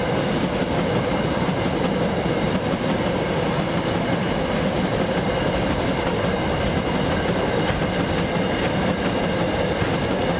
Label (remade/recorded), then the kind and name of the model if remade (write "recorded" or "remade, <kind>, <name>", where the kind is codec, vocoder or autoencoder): recorded